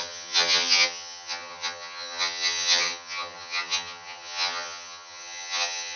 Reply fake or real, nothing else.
fake